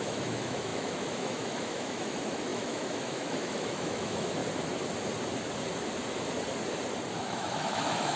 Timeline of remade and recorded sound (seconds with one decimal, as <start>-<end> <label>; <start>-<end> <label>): 0.0-4.4 remade; 4.4-7.1 recorded; 7.1-8.2 remade